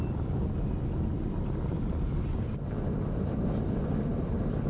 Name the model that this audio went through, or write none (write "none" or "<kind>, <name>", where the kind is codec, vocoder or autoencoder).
vocoder, BigVGAN v2